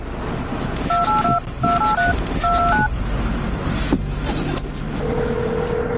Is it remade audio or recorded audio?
recorded